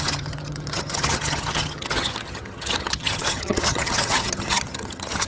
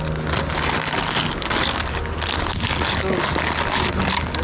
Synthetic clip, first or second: first